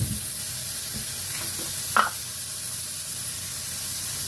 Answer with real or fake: real